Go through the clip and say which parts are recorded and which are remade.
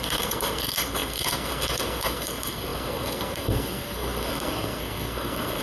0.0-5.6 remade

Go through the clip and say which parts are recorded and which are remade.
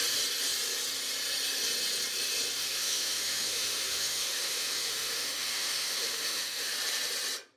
0.0-2.6 recorded; 2.6-6.7 remade; 6.7-7.6 recorded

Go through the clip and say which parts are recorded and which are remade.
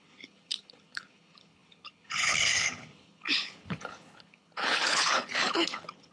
0.0-6.1 remade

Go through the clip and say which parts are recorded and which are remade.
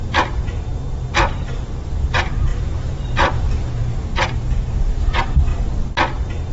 0.0-0.7 remade; 0.7-1.3 recorded; 1.3-5.5 remade; 5.5-6.5 recorded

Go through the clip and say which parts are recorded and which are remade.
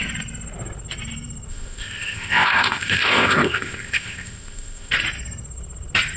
0.0-1.5 recorded; 1.5-4.9 remade; 4.9-6.2 recorded